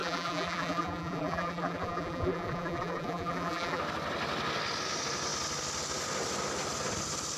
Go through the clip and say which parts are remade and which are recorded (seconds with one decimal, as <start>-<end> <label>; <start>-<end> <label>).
0.0-3.8 remade; 3.8-7.4 recorded